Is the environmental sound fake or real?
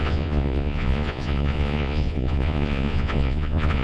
fake